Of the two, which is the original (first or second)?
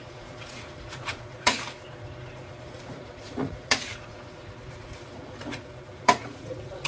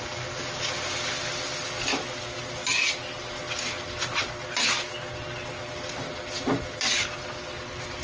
second